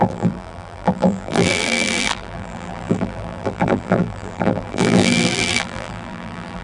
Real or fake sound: fake